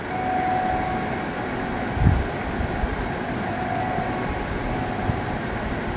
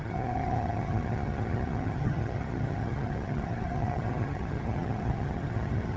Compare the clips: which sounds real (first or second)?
first